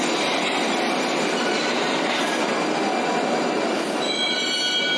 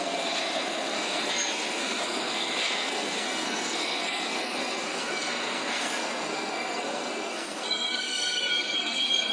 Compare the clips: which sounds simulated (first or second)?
second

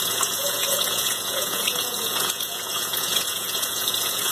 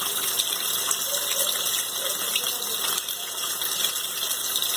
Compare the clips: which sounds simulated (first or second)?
first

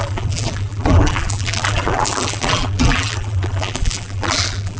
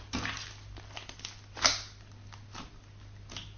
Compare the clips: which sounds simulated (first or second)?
first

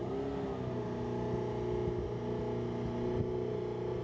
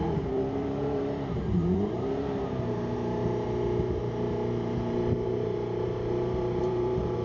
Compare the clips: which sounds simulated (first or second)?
second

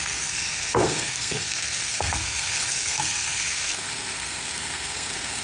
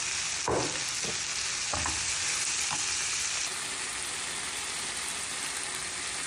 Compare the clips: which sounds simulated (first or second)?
first